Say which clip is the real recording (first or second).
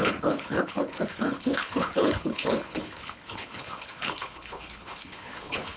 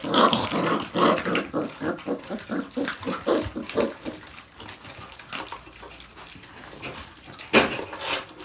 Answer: second